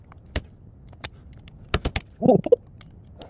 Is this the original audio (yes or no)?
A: yes